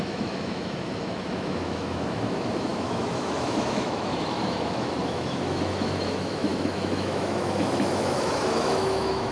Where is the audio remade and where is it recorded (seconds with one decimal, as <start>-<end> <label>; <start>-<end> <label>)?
0.0-9.3 remade